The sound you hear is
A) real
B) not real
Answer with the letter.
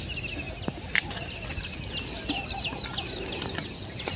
A